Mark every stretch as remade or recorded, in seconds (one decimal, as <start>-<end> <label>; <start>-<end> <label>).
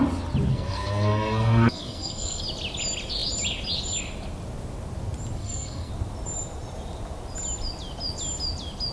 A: 0.0-0.5 recorded; 0.5-2.4 remade; 2.4-5.4 recorded; 5.4-5.9 remade; 5.9-8.9 recorded